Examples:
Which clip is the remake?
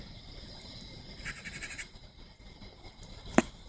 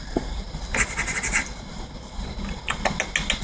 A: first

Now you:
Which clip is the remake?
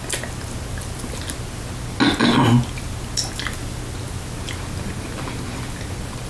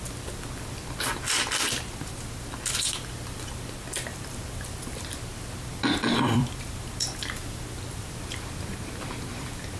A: second